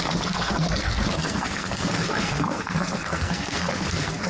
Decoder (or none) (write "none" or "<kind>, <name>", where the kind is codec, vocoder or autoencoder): codec, SNAC